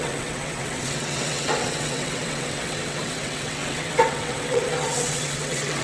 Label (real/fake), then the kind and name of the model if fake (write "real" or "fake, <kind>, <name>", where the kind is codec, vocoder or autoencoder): fake, vocoder, WaveNeXt